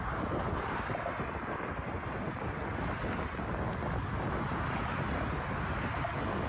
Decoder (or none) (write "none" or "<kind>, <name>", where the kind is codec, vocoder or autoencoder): none